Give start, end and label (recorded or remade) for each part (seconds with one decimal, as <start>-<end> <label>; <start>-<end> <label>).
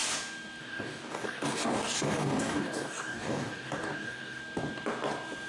0.0-0.6 recorded; 0.6-4.4 remade; 4.4-5.5 recorded